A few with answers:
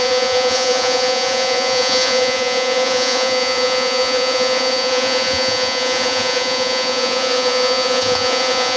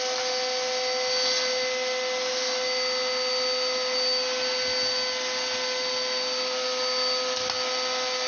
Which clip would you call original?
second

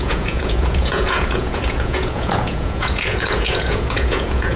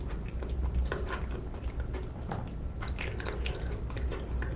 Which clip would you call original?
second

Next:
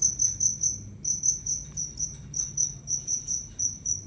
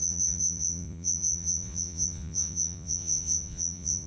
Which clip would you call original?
first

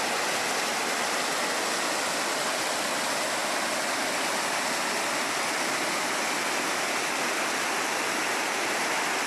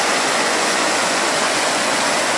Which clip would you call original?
first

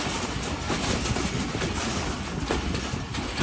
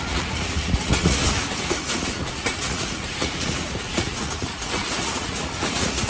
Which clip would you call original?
first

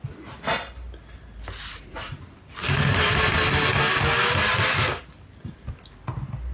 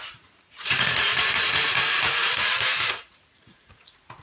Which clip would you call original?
first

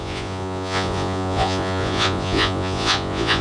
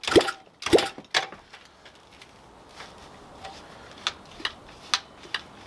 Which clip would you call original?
second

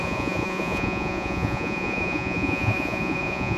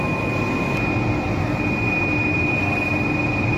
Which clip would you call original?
second